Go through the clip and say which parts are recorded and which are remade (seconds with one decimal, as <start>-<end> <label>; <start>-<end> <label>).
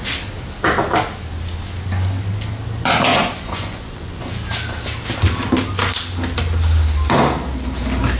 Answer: 0.0-3.1 recorded; 3.1-4.3 remade; 4.3-8.2 recorded